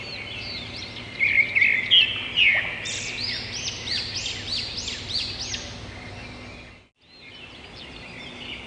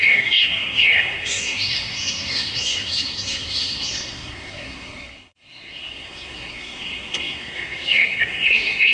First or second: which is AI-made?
second